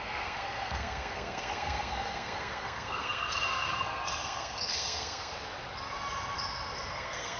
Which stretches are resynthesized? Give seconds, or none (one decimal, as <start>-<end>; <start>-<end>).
0.0-5.3; 6.9-7.4